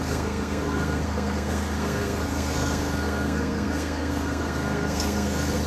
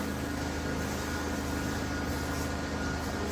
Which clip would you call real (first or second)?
second